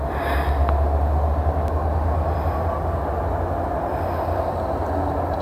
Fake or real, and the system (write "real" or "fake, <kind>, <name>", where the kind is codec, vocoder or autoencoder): real